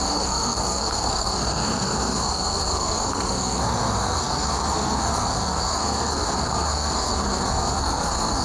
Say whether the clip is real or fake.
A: fake